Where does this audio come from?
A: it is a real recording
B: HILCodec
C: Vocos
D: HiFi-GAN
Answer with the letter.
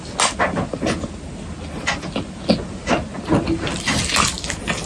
A